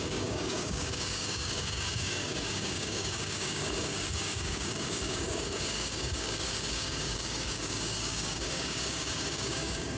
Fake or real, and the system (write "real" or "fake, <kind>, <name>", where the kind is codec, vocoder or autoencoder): fake, codec, DAC